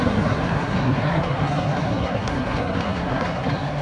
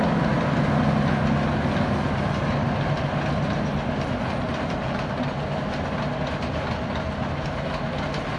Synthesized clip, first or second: first